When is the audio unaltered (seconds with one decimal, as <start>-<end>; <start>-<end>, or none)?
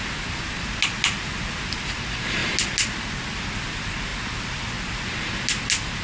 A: 0.0-6.0